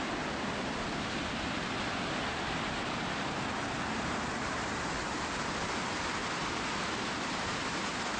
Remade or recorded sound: remade